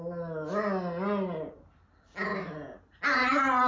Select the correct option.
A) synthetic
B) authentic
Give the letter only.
B